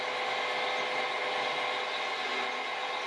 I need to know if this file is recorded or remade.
recorded